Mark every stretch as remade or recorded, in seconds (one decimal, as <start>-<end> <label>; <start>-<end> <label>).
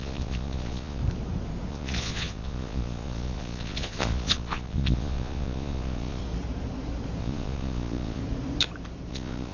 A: 0.0-1.0 remade; 1.0-1.7 recorded; 1.7-6.2 remade; 6.2-7.2 recorded; 7.2-8.2 remade; 8.2-9.1 recorded; 9.1-9.5 remade